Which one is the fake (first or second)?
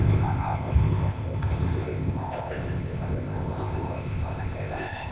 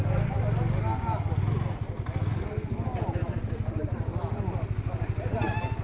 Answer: first